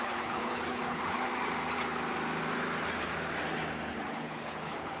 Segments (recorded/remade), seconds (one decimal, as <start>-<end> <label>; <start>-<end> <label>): 0.0-1.3 remade; 1.3-3.9 recorded; 3.9-5.0 remade